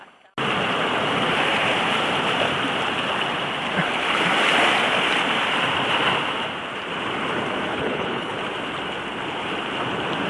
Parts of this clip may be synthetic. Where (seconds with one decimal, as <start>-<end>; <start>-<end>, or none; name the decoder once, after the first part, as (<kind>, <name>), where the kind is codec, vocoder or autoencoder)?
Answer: 7.7-8.4 (codec, HILCodec)